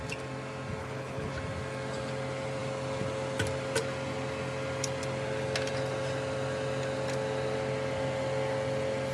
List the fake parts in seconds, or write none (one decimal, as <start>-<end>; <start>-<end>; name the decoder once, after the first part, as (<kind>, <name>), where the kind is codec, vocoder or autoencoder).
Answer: 0.8-1.3 (codec, HILCodec)